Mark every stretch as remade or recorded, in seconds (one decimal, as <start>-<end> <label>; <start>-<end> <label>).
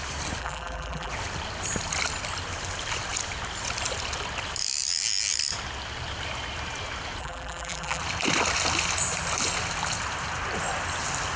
0.0-0.4 recorded; 0.4-1.1 remade; 1.1-7.2 recorded; 7.2-8.0 remade; 8.0-11.4 recorded